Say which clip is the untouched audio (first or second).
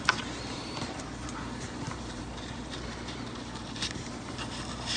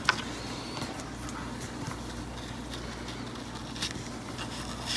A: second